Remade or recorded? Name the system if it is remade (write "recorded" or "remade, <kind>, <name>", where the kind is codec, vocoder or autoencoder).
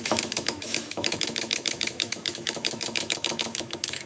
remade, autoencoder, DAC-VAE